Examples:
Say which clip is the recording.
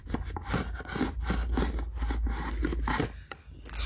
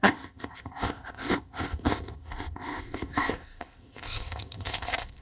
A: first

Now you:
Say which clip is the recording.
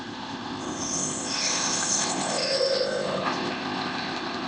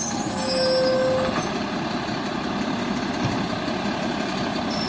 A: second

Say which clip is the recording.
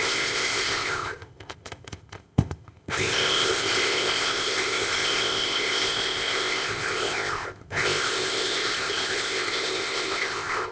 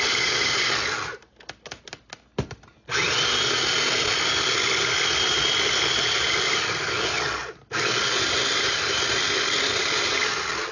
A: second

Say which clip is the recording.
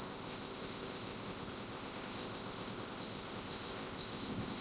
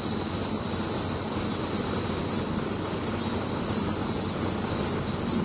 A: second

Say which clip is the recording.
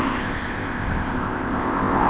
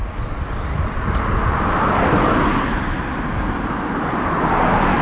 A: second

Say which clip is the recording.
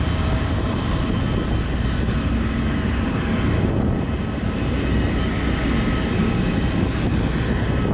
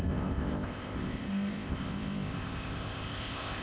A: first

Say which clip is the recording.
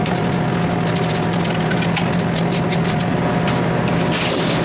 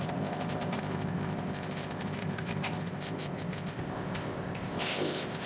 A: first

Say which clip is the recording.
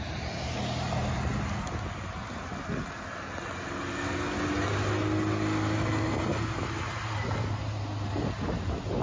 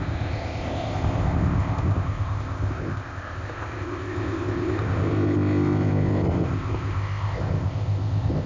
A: first